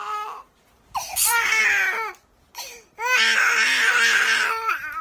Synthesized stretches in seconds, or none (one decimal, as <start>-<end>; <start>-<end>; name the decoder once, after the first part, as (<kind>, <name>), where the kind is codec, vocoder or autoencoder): 1.1-1.6 (codec, SNAC)